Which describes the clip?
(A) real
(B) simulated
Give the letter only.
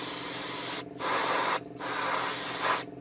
A